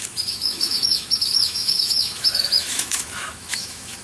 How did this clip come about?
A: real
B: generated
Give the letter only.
B